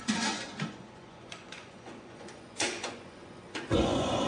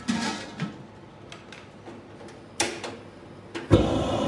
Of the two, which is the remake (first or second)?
first